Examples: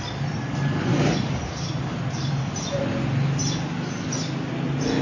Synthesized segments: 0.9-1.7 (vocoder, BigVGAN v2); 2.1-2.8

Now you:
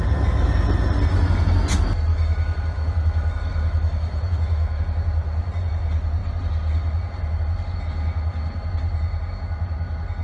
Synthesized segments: 2.1-4.8 (autoencoder, DAC-VAE)

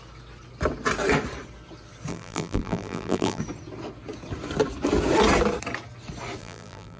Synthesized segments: 2.1-3.4 (vocoder, BigVGAN v2); 6.4-7.0

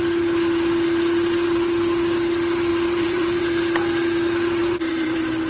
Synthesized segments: 2.7-3.4 (vocoder, BigVGAN v2); 4.6-5.5

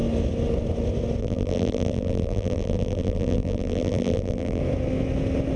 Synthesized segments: 1.2-4.6 (vocoder, BigVGAN v2)

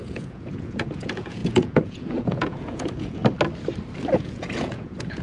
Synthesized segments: 0.0-3.2 (vocoder, Vocos); 4.2-5.2

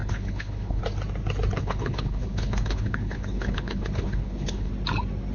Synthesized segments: 0.0-0.8 (codec, HILCodec); 1.6-4.7

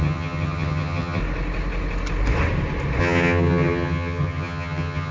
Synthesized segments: 0.0-1.2 (vocoder, HiFi-GAN); 3.0-5.1